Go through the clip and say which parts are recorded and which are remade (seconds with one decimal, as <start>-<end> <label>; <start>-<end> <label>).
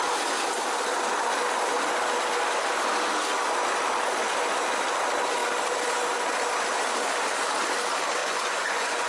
0.0-8.2 recorded; 8.2-9.1 remade